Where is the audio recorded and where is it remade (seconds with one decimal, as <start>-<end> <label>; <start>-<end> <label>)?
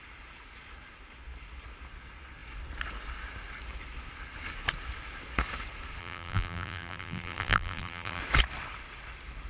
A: 0.0-6.0 recorded; 6.0-8.2 remade; 8.2-9.5 recorded